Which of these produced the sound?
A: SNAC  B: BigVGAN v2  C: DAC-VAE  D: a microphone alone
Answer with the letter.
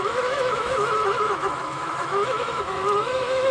C